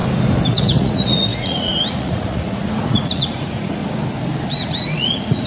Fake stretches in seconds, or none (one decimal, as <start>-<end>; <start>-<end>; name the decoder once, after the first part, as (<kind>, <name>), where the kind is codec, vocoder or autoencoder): 0.5-3.8 (vocoder, Vocos); 4.5-5.5

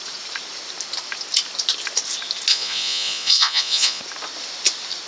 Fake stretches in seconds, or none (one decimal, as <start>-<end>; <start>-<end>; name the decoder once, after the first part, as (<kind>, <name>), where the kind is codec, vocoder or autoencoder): 2.5-4.0 (vocoder, Vocos)

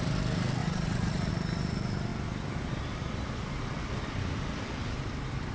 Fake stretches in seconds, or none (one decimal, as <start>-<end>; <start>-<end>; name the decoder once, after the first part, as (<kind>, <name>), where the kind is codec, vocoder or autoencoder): 0.6-1.3 (vocoder, Vocos)

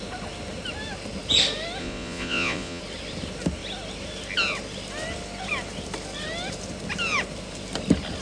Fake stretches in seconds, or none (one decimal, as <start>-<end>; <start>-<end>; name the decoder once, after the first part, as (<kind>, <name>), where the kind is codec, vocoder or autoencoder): 1.8-2.8 (vocoder, Vocos)

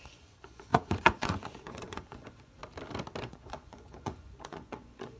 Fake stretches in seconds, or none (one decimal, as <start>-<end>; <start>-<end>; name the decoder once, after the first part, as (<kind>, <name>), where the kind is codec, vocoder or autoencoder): 0.0-2.6 (vocoder, Vocos); 3.2-5.2

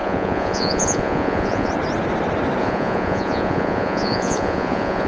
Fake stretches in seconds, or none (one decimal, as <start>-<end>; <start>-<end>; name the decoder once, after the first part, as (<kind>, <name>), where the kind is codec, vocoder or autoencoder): 0.0-1.7 (vocoder, Vocos); 2.6-5.1